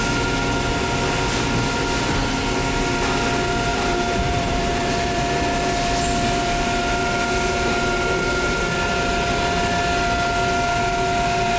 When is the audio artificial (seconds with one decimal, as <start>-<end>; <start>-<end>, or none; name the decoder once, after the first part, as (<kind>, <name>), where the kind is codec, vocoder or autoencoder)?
3.7-5.2 (vocoder, BigVGAN v2)